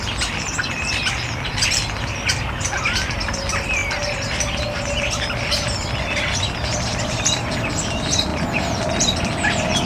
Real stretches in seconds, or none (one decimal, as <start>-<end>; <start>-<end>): 0.0-8.3; 9.0-9.9